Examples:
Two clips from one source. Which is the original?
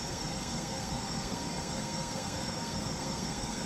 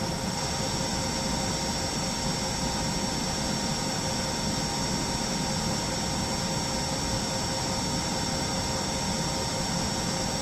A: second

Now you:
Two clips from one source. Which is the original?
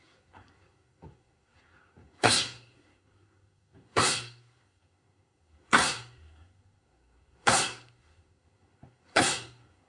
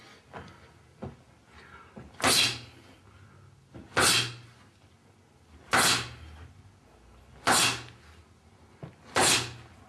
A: second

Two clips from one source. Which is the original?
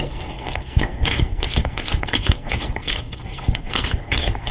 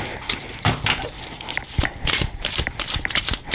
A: second